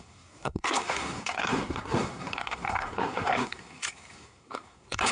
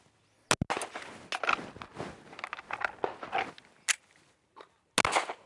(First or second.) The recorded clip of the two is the second